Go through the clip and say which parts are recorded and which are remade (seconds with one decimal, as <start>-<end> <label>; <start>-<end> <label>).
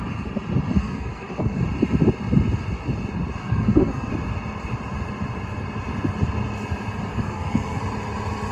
0.0-0.8 recorded; 0.8-1.6 remade; 1.6-3.4 recorded; 3.4-4.1 remade; 4.1-7.1 recorded; 7.1-7.8 remade; 7.8-8.5 recorded